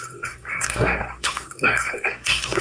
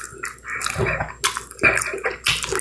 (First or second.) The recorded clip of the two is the second